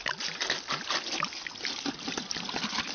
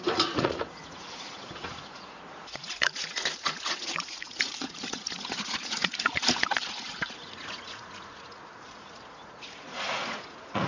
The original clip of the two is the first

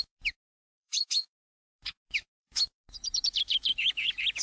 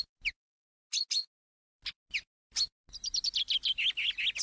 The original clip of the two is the second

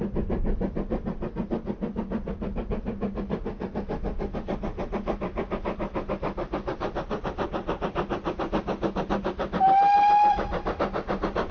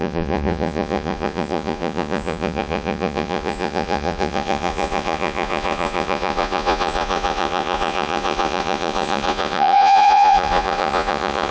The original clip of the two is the first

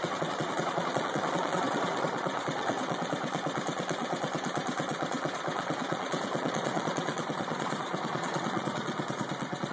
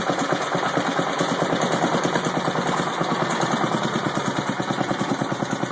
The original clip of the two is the second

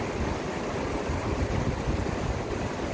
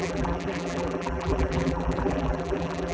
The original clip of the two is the first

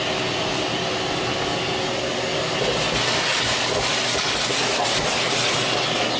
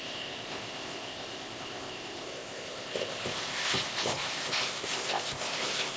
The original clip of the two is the first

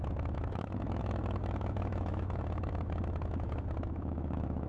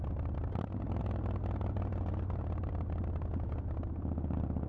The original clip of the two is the second